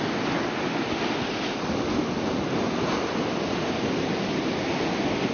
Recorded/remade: recorded